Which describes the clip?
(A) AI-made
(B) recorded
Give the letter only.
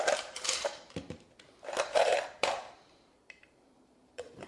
A